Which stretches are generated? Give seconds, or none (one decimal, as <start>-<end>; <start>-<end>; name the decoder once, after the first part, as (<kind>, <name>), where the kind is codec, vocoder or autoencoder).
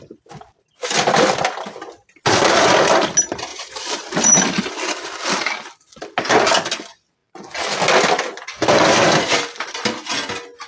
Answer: 3.5-4.6 (vocoder, BigVGAN v2)